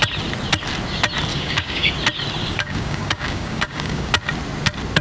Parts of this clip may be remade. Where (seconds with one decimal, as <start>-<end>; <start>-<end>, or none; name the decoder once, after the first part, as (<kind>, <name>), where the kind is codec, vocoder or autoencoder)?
1.3-1.9 (codec, DAC); 2.4-4.1

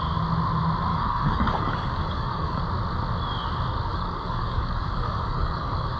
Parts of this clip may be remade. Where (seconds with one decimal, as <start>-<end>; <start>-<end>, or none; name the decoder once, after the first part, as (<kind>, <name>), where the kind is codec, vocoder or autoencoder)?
0.9-2.6 (codec, DAC); 3.9-6.0

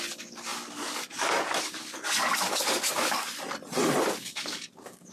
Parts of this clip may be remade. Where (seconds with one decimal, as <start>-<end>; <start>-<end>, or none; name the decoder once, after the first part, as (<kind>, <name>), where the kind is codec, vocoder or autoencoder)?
0.0-3.3 (codec, DAC); 4.2-5.1

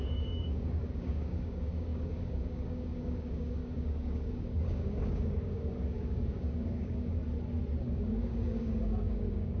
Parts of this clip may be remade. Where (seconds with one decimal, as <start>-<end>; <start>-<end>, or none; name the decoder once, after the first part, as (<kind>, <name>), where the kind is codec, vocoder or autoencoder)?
0.0-7.2 (codec, DAC); 7.8-9.6

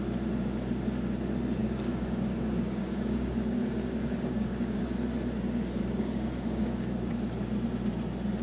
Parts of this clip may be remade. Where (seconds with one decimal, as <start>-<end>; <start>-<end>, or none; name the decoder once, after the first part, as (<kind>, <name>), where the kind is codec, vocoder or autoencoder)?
1.6-4.8 (codec, DAC); 5.8-7.1

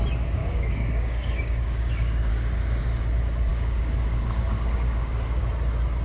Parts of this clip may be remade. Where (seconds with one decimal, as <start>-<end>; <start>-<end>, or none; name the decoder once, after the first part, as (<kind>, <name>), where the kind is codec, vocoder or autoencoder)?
0.4-2.3 (codec, DAC); 3.5-5.4

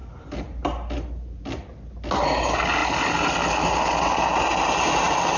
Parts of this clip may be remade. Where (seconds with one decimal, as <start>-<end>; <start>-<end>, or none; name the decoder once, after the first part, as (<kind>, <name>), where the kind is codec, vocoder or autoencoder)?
none